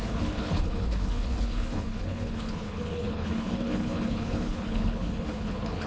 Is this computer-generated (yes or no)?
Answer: yes